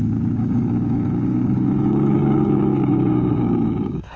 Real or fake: fake